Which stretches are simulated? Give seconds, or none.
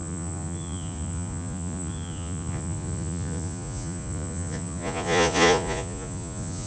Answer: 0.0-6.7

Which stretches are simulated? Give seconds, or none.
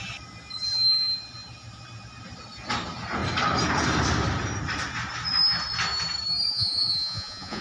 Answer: 6.5-7.6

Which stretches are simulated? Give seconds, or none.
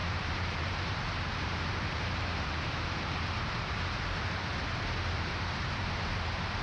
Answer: 0.0-4.5; 5.1-6.6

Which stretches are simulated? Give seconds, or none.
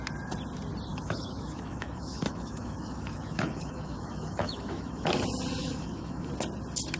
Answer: 0.9-5.1; 5.6-6.3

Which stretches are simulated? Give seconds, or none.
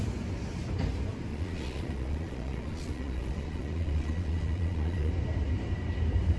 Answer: 1.3-5.1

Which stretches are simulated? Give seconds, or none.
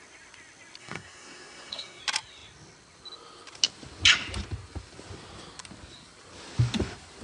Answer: 0.8-2.0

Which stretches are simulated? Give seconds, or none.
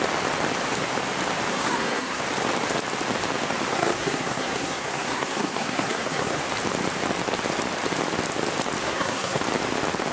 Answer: 1.5-2.2; 3.7-6.4; 8.8-9.4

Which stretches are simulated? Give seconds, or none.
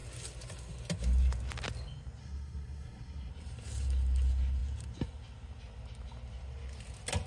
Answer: 2.2-3.3